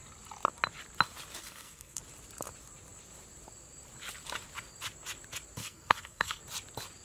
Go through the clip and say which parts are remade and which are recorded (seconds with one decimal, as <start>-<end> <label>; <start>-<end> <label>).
0.0-1.4 recorded; 1.4-2.0 remade; 2.0-5.6 recorded; 5.6-6.4 remade; 6.4-7.0 recorded